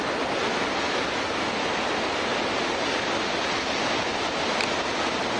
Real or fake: real